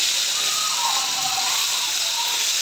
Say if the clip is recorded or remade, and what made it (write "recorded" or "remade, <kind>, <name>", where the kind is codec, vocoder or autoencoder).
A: recorded